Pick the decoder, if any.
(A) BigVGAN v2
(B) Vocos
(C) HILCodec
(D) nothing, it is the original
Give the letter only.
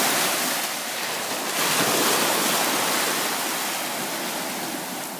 D